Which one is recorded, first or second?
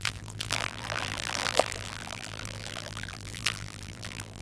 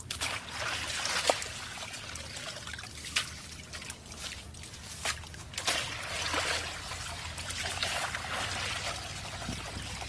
second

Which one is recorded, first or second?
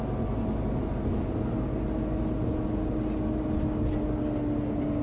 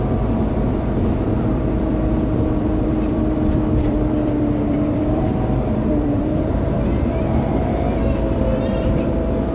first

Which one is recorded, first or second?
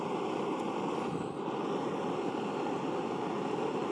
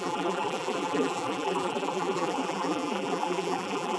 first